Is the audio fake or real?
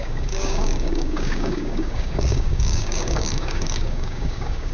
fake